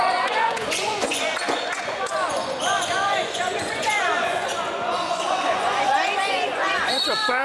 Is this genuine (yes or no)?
no